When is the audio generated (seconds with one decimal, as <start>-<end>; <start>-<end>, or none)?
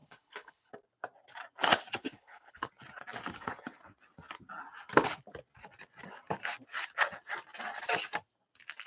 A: 0.0-0.7; 2.0-2.7